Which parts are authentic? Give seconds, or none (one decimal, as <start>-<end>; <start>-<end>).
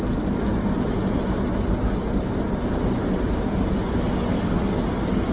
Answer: 0.0-5.3